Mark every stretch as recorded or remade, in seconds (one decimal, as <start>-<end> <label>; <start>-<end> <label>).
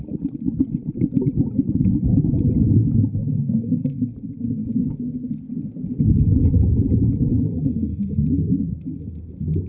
0.0-9.7 recorded